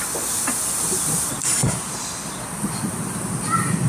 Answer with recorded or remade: recorded